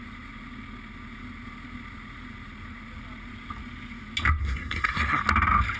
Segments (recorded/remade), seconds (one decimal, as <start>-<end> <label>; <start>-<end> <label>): 0.0-4.4 recorded; 4.4-5.2 remade; 5.2-5.8 recorded